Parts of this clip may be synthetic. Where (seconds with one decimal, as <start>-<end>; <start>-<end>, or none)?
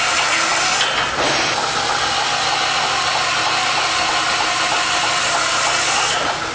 none